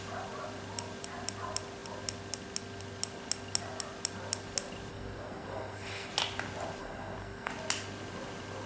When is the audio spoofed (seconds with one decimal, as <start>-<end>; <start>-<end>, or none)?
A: 4.9-6.1; 6.8-7.5